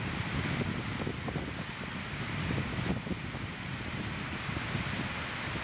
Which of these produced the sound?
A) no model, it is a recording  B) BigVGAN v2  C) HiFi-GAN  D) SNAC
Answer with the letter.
A